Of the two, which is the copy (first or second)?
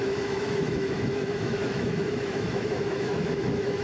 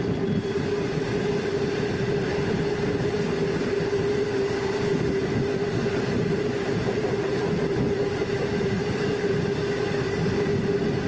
first